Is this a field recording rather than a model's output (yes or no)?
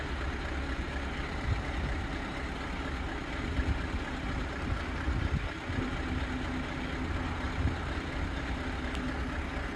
yes